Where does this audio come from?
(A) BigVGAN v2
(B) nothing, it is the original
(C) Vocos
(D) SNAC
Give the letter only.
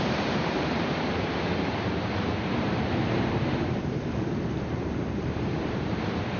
A